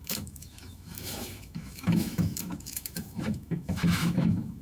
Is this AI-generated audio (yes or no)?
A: yes